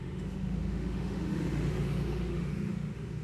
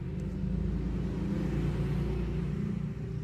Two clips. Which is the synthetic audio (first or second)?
first